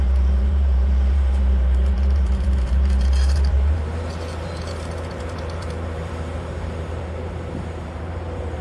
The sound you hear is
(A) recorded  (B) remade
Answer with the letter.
B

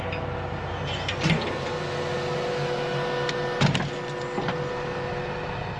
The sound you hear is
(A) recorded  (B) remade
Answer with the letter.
A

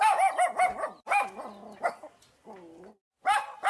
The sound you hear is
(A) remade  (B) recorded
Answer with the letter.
B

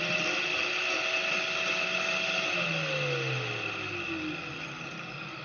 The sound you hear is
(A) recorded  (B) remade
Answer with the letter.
A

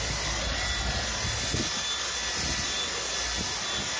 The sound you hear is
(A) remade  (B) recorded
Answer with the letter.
B